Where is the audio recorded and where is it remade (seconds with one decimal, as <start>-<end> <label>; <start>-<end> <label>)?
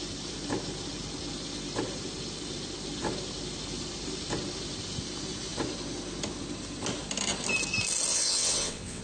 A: 0.0-8.1 recorded; 8.1-9.0 remade